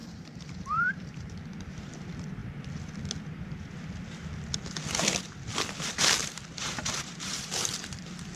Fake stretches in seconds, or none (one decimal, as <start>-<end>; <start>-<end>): 0.0-1.3; 6.2-7.7